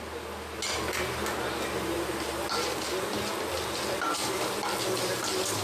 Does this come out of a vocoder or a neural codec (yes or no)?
no